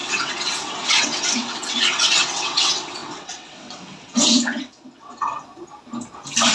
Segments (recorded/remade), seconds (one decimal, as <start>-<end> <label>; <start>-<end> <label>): 0.0-5.3 remade; 5.3-6.5 recorded